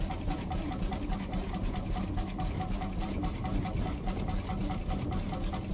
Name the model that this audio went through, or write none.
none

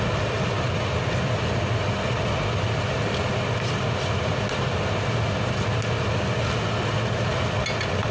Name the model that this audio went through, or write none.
none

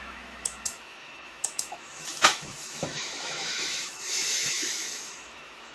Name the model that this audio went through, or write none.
autoencoder, DAC-VAE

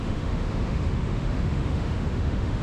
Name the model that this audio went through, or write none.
autoencoder, DAC-VAE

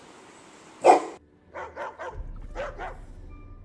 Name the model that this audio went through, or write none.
none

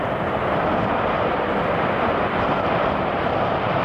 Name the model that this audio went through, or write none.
none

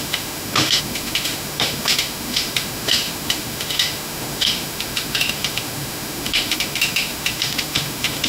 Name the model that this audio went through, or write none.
autoencoder, DAC-VAE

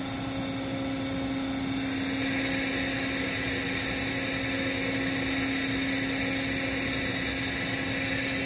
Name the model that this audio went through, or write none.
none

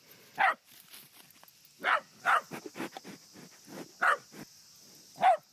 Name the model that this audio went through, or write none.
none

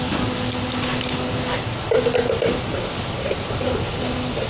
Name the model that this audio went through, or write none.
none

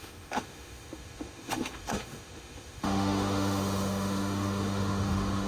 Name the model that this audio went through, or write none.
autoencoder, DAC-VAE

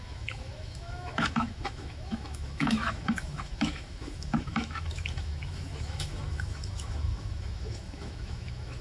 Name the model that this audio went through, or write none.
autoencoder, DAC-VAE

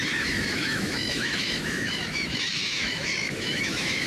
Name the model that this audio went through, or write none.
autoencoder, DAC-VAE